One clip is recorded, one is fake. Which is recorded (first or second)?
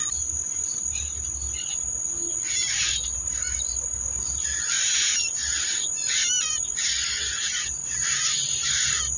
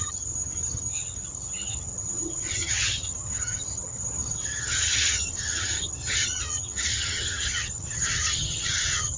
first